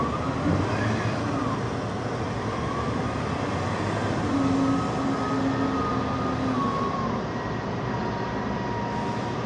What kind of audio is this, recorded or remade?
recorded